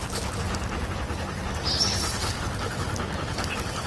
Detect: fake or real real